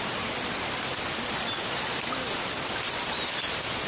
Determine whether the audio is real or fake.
real